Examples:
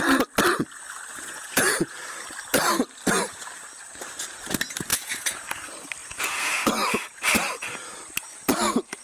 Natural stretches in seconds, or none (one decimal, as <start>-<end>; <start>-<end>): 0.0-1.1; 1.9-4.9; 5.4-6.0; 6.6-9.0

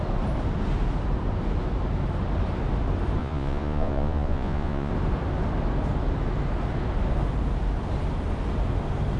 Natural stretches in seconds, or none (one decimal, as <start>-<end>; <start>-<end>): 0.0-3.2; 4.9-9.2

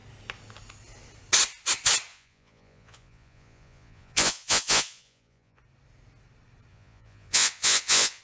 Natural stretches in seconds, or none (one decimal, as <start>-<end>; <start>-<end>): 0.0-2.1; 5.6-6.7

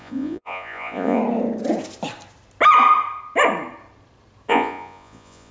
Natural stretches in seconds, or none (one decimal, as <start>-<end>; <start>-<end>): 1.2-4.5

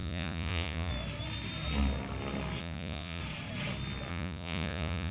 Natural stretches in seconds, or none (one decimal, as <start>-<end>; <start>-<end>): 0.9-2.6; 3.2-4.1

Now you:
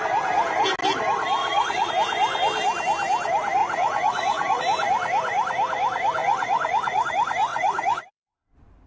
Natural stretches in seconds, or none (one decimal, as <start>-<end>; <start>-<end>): 0.0-1.4; 1.9-3.6; 4.6-6.2; 7.1-7.5; 8.0-8.9